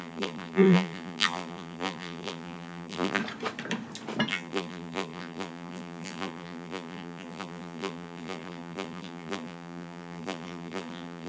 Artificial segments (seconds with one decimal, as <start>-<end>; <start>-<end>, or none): 0.0-3.2; 4.3-11.3